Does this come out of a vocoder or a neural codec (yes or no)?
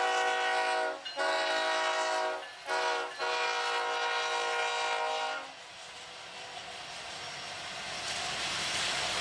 no